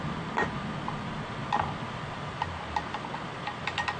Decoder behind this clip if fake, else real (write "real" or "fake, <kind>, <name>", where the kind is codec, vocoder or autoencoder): real